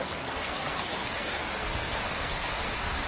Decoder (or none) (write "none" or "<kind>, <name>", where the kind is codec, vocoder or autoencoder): codec, SNAC